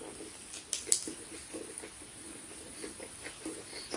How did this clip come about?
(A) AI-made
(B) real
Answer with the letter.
B